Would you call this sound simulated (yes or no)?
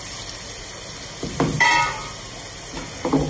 no